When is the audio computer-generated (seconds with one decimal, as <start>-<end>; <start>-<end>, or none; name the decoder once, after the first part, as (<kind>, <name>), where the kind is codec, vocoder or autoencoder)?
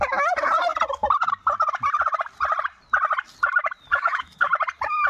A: 3.9-4.5 (codec, DAC)